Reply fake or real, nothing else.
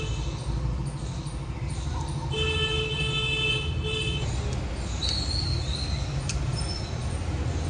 real